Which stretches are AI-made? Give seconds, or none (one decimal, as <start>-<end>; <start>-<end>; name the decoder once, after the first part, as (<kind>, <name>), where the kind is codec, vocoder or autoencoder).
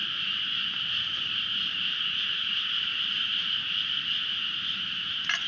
0.0-5.5 (vocoder, BigVGAN v2)